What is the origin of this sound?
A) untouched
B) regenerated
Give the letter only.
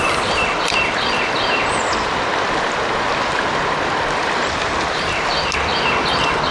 A